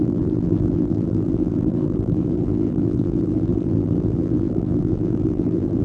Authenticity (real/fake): fake